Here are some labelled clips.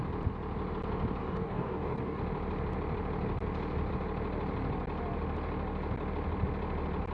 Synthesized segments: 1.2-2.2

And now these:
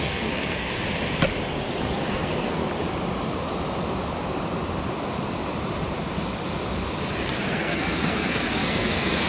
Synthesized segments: 0.0-0.7; 2.1-2.6; 7.4-9.3

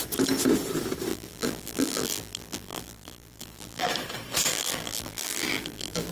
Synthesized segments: 1.1-3.9; 4.5-6.1

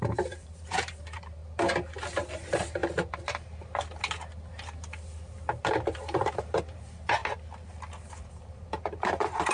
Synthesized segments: 0.0-1.4; 2.3-2.8; 5.7-7.2; 8.3-9.5

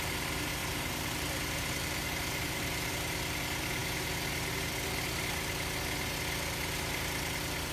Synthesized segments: 0.6-2.9